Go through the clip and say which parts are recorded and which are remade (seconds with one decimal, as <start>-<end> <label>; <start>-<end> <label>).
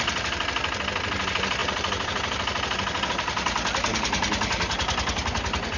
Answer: 0.0-5.8 remade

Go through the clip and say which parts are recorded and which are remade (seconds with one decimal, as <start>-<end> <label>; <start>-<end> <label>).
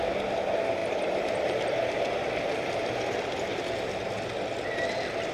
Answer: 0.0-0.8 recorded; 0.8-1.8 remade; 1.8-5.3 recorded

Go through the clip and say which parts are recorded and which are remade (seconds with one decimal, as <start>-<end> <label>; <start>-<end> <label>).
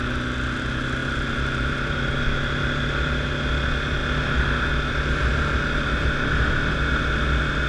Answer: 0.0-1.0 recorded; 1.0-2.1 remade; 2.1-7.7 recorded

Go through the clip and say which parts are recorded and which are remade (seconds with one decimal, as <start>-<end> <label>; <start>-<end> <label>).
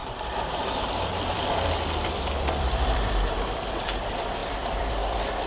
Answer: 0.0-5.5 remade